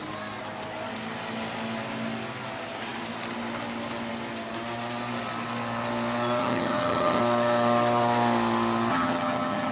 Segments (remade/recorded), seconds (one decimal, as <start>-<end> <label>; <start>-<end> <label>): 0.0-6.4 recorded; 6.4-7.2 remade; 7.2-8.9 recorded; 8.9-9.7 remade